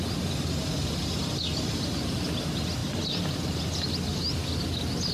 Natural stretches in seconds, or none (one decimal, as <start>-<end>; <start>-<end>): 0.0-5.1